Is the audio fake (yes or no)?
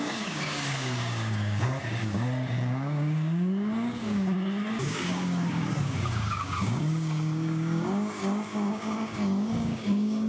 yes